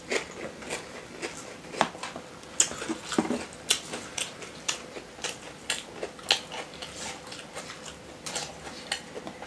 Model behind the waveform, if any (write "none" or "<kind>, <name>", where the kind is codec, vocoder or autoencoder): none